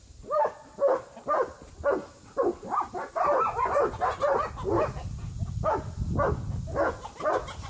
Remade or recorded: recorded